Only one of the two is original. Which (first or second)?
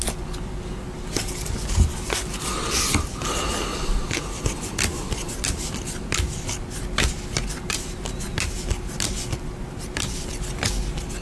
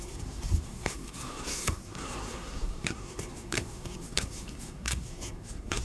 first